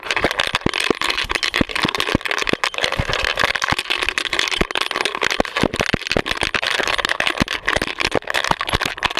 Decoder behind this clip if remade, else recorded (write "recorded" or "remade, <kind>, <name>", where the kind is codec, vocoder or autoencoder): recorded